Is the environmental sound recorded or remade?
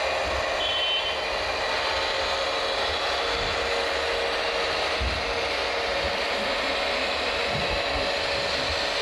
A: recorded